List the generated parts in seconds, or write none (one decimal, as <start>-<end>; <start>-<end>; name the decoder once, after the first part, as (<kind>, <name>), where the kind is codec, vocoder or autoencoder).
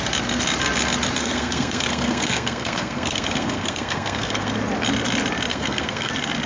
1.2-4.5 (codec, SNAC); 5.5-6.1